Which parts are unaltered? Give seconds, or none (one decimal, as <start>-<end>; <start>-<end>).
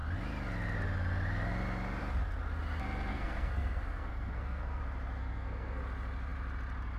0.0-3.1; 4.8-5.2; 5.8-7.0